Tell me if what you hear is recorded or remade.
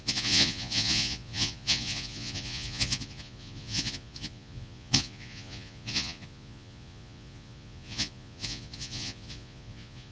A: remade